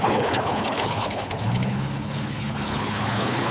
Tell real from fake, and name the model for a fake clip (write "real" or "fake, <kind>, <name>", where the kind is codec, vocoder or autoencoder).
fake, codec, HILCodec